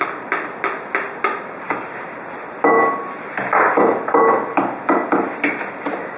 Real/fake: real